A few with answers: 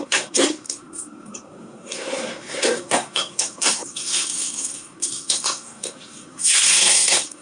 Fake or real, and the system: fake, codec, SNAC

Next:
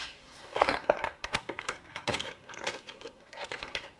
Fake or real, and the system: fake, codec, SNAC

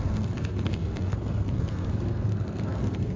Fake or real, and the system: fake, codec, SNAC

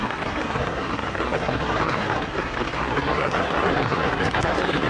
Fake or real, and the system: fake, codec, SNAC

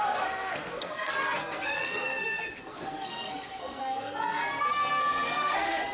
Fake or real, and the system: fake, codec, SNAC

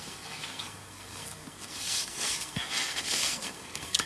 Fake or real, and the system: fake, codec, SNAC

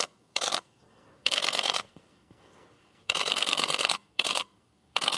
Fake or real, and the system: fake, codec, SNAC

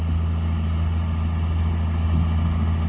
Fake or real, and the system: real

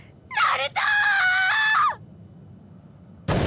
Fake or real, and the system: real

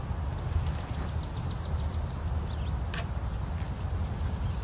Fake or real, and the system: real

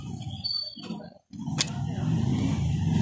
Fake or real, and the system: real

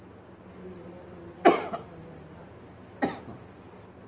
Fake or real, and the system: real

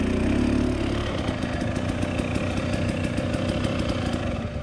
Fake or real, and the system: real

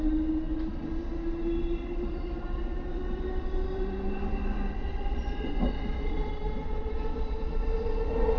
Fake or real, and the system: real